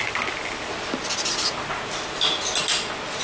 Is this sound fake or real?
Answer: real